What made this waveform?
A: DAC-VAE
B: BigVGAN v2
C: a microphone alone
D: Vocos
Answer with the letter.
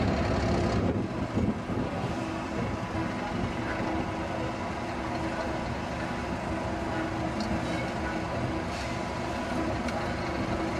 C